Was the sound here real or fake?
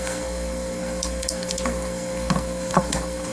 fake